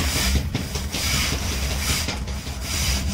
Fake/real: fake